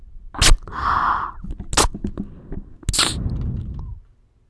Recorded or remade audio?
recorded